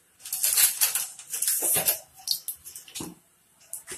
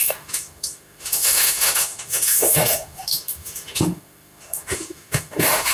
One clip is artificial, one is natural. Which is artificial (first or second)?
second